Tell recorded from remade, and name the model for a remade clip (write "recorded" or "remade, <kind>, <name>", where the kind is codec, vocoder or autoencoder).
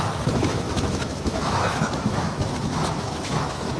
remade, autoencoder, DAC-VAE